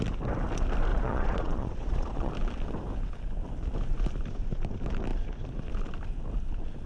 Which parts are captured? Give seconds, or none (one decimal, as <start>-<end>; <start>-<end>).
0.0-0.9; 2.3-6.9